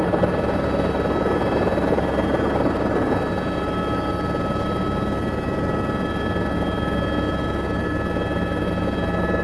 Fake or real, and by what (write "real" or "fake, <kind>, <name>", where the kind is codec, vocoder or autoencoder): real